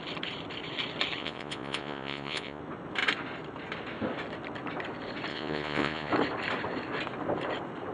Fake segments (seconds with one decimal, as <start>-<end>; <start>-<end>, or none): 1.2-2.6; 5.3-6.1